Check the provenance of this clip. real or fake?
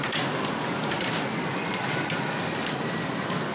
real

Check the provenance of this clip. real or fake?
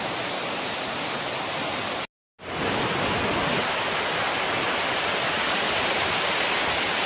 real